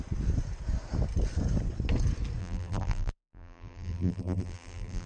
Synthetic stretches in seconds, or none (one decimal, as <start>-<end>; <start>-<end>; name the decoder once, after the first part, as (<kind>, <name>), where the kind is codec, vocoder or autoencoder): 2.4-5.1 (vocoder, BigVGAN v2)